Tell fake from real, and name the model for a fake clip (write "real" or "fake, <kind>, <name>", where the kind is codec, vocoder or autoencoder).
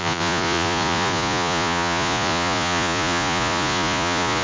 fake, vocoder, Vocos